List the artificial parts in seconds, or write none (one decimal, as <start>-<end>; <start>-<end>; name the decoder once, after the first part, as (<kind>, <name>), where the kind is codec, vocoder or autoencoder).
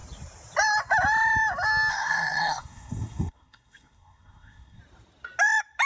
1.9-4.8 (codec, SNAC)